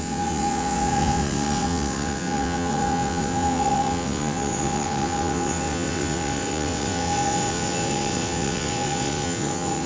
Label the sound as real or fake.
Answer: fake